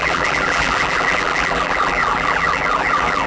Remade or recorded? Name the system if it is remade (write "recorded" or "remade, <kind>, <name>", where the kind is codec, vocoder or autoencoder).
remade, vocoder, BigVGAN v2